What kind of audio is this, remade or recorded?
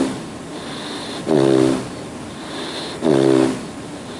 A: recorded